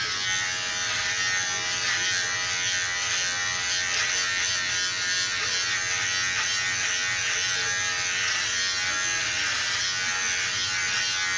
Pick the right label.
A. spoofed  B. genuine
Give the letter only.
B